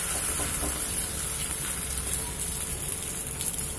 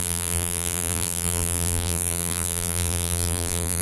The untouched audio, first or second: first